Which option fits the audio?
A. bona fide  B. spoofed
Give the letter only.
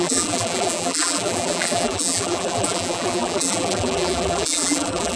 B